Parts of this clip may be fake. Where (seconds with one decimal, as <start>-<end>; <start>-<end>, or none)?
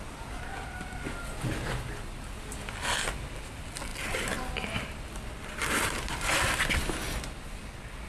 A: none